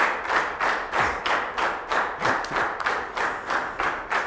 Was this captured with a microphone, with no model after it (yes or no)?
yes